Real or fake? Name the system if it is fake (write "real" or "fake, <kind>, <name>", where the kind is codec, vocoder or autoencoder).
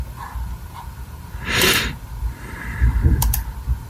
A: fake, vocoder, BigVGAN v2